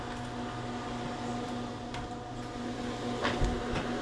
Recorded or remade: recorded